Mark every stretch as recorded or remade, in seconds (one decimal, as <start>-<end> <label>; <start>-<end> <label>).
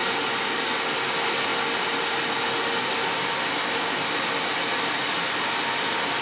0.0-6.2 recorded